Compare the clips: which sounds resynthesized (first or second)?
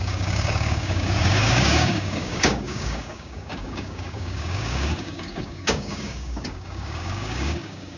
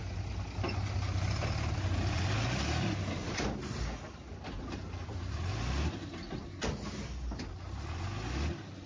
first